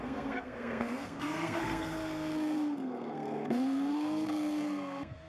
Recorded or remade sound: remade